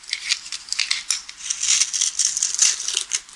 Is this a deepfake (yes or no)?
no